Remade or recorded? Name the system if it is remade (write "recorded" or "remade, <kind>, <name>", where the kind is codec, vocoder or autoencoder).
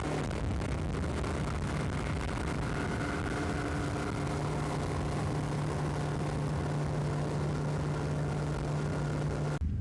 recorded